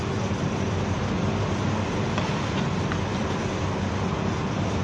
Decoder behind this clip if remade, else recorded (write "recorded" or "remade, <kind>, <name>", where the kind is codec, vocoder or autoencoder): recorded